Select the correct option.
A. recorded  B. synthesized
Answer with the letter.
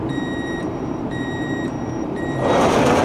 B